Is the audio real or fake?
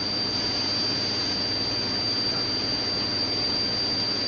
real